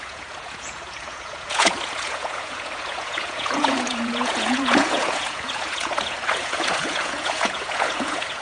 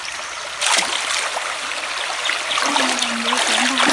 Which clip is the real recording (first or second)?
second